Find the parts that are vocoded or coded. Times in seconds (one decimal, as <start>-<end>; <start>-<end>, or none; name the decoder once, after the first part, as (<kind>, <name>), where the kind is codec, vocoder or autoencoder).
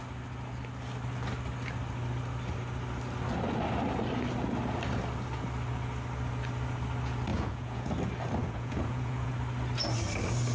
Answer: 7.3-7.9 (vocoder, Vocos); 8.4-9.3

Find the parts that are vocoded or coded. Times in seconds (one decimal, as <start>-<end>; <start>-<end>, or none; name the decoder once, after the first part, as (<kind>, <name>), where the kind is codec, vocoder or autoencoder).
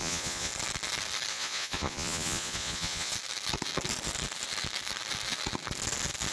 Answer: 0.0-0.5 (vocoder, Vocos); 1.3-3.1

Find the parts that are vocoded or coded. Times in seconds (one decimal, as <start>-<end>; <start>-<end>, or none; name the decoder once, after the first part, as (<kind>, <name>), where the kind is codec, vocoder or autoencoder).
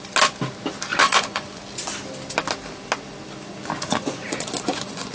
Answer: 0.9-1.6 (vocoder, Vocos); 3.9-5.1